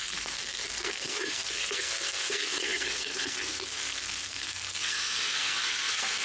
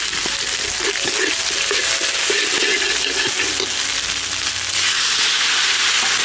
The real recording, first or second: second